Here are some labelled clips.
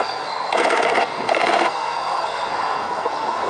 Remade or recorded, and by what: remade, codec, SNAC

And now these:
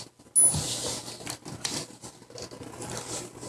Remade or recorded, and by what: recorded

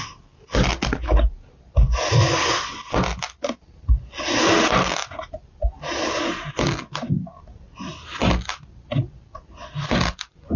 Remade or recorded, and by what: recorded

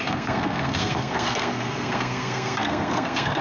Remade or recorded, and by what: remade, codec, SNAC